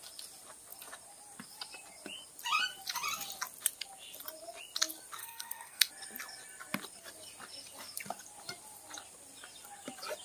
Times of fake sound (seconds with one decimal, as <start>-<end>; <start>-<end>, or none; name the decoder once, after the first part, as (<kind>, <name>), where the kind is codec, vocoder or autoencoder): 5.2-5.9 (codec, SNAC)